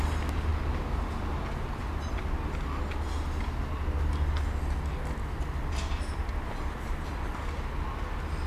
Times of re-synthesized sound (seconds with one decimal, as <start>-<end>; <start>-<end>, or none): none